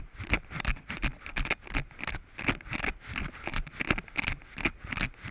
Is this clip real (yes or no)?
yes